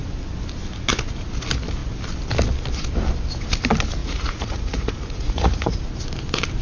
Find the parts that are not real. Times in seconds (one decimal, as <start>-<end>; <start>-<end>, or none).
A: 4.0-5.8